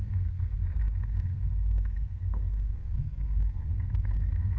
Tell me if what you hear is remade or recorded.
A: remade